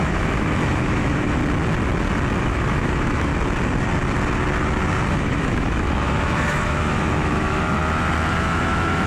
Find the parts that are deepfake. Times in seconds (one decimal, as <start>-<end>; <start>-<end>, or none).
0.0-1.4; 2.4-3.3; 5.1-7.8; 8.4-9.1